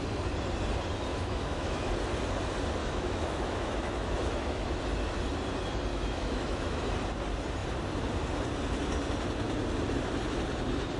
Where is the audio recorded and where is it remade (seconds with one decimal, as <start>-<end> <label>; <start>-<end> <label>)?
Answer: 0.0-1.1 recorded; 1.1-1.9 remade; 1.9-2.8 recorded; 2.8-4.8 remade; 4.8-5.9 recorded; 5.9-6.8 remade; 6.8-11.0 recorded